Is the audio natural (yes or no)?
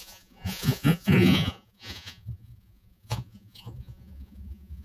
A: no